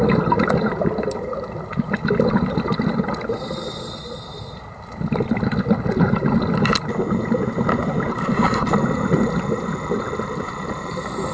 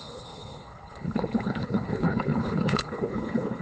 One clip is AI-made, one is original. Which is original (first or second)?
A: first